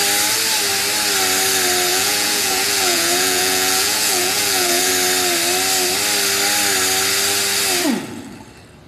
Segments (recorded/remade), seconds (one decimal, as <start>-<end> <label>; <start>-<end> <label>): 0.0-1.9 recorded; 1.9-4.9 remade; 4.9-8.9 recorded